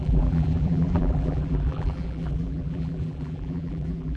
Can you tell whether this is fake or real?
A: fake